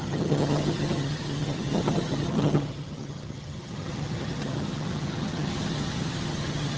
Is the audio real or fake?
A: fake